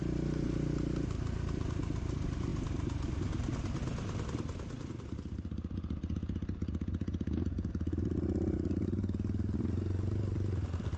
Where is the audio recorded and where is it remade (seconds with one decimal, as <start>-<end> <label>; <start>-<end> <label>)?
0.0-11.0 recorded